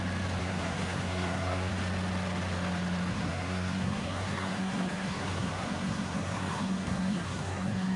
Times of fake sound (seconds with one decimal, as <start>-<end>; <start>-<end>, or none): 0.4-1.7; 3.1-8.0